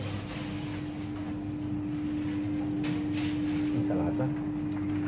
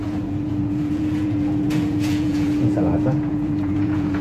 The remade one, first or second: second